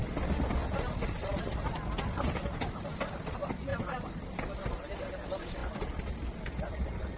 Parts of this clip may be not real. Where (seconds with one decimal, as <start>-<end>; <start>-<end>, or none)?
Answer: none